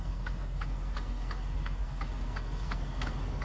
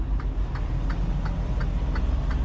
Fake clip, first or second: first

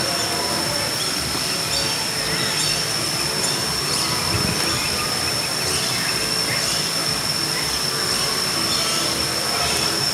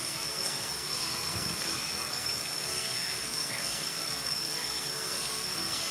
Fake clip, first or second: second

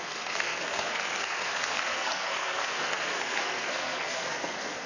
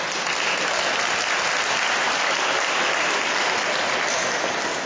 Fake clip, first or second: first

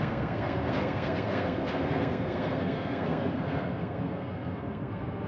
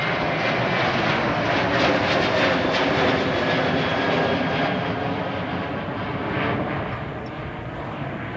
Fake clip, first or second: first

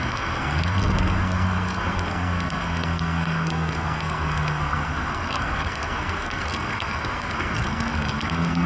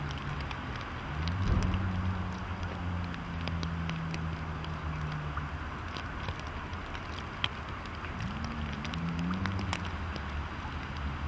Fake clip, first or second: first